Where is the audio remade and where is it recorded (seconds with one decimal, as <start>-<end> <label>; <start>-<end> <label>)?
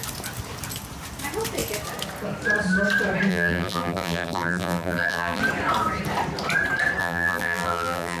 0.0-3.3 recorded; 3.3-5.4 remade; 5.4-7.0 recorded; 7.0-8.2 remade